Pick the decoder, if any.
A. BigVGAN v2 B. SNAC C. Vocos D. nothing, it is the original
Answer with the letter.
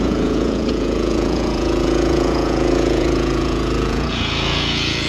C